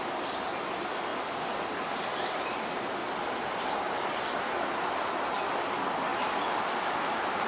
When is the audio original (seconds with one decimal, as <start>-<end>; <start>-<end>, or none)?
0.0-7.5